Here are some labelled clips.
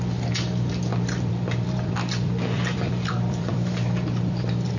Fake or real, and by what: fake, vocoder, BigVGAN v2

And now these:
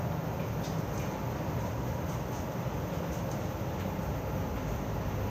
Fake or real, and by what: real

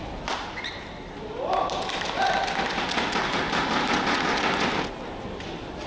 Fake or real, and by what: real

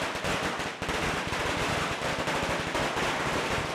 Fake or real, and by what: real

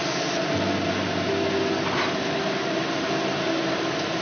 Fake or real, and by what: real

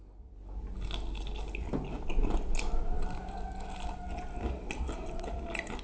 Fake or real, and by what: real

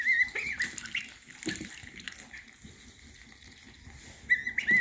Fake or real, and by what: real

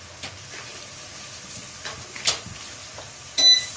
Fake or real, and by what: real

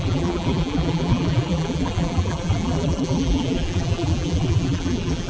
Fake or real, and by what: fake, vocoder, BigVGAN v2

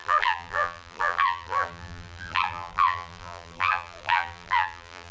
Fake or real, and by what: fake, vocoder, BigVGAN v2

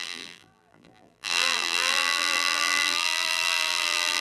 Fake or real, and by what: fake, vocoder, BigVGAN v2